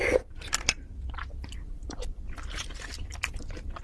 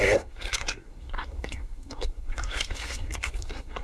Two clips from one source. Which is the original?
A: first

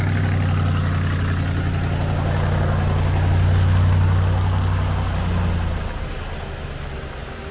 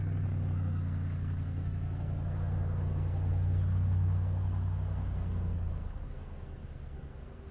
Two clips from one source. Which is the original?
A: first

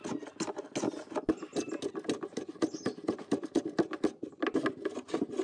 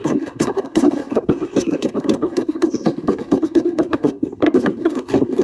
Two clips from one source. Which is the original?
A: first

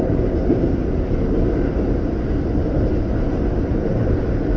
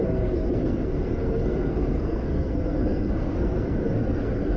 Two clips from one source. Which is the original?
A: first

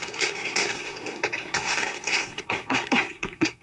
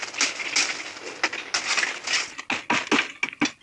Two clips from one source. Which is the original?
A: second